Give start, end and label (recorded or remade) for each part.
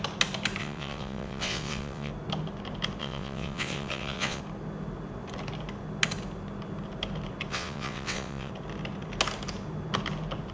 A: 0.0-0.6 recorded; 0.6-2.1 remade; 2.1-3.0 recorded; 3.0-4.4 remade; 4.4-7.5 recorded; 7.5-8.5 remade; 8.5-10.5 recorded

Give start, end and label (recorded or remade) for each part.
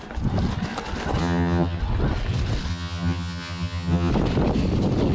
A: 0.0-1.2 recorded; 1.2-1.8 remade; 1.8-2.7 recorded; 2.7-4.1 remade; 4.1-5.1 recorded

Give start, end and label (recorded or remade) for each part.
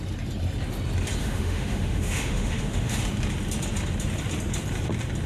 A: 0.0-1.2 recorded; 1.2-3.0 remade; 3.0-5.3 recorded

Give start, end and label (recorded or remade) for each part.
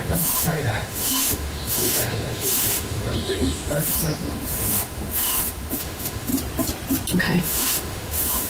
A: 0.0-6.3 remade; 6.3-7.2 recorded; 7.2-8.5 remade